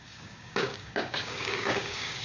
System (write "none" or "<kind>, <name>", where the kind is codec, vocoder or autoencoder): codec, DAC